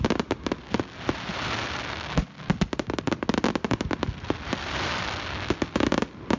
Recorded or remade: recorded